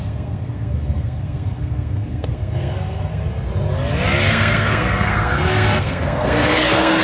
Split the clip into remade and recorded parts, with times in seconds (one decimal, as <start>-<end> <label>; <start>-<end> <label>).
0.0-3.2 remade; 3.2-4.3 recorded; 4.3-7.0 remade